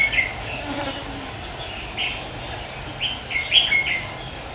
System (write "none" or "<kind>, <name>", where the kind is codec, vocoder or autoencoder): none